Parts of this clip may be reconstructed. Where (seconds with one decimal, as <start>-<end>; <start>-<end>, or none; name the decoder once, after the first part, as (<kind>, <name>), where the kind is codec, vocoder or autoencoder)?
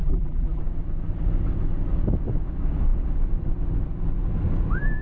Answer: 0.0-0.6 (vocoder, BigVGAN v2)